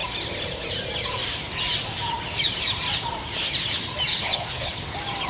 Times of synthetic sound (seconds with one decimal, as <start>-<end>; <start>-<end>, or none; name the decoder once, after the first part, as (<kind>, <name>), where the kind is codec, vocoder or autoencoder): 4.1-4.8 (codec, HILCodec)